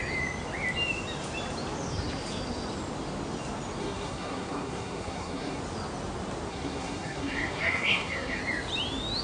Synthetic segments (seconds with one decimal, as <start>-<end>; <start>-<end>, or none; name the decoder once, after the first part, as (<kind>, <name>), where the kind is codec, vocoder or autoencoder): 3.8-5.6 (codec, SNAC); 6.5-8.4